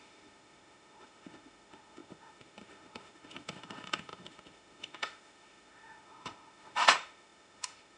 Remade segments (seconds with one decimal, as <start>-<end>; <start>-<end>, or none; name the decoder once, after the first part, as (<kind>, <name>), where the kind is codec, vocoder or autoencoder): 0.0-8.0 (autoencoder, DAC-VAE)